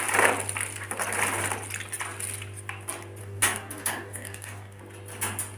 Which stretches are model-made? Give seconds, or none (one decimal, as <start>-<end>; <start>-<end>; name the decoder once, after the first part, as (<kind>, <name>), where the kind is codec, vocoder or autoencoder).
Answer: 3.2-4.8 (codec, DAC)